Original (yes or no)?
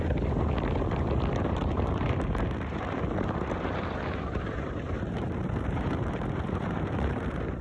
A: no